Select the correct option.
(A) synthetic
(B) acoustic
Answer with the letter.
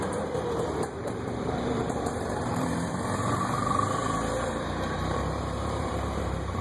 A